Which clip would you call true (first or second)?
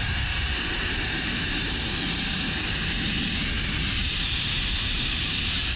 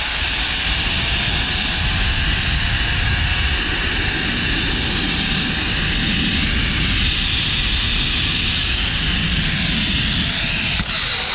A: second